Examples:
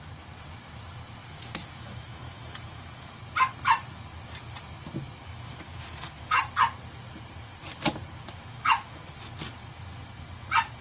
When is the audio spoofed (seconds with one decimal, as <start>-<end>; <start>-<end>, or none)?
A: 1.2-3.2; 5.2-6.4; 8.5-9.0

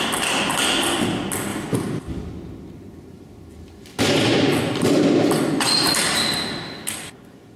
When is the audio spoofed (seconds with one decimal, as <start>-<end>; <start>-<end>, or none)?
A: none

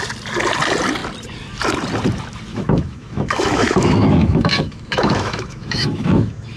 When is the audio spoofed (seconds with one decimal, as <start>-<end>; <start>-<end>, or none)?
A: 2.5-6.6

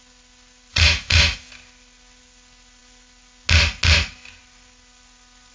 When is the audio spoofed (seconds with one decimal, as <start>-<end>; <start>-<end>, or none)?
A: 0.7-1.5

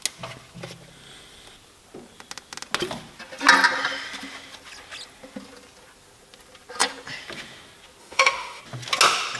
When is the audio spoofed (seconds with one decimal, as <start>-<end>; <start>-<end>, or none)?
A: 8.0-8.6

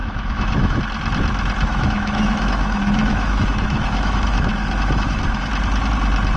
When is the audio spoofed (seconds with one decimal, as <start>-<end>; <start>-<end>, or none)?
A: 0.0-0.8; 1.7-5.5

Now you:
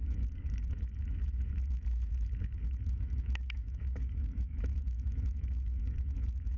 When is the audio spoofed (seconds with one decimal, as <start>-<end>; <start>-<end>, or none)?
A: 0.0-6.6

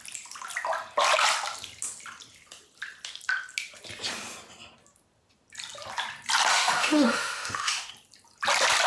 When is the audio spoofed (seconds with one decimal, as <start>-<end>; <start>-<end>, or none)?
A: 6.5-7.9